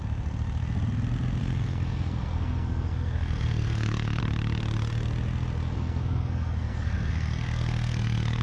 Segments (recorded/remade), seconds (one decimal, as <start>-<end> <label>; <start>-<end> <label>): 0.0-1.4 recorded; 1.4-4.2 remade; 4.2-5.6 recorded; 5.6-8.4 remade